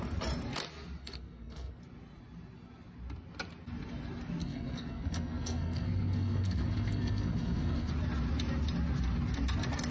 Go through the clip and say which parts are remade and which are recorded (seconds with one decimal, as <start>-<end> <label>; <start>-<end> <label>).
0.0-1.0 recorded; 1.0-1.8 remade; 1.8-4.4 recorded; 4.4-7.9 remade; 7.9-9.9 recorded